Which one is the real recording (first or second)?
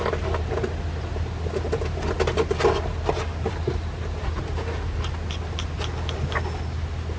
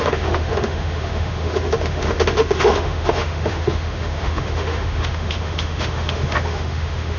first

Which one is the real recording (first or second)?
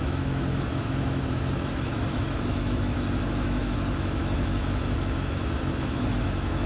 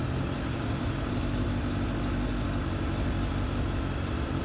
second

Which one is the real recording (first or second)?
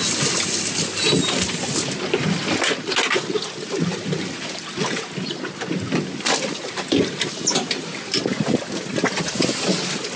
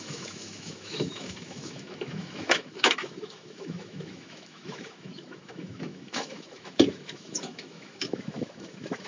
first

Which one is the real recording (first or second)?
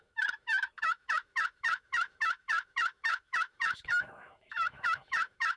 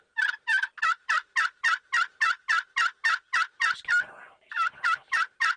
second